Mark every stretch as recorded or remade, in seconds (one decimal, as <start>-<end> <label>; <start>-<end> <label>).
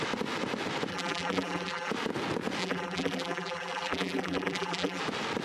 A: 0.0-0.9 recorded; 0.9-1.9 remade; 1.9-2.6 recorded; 2.6-5.0 remade; 5.0-5.4 recorded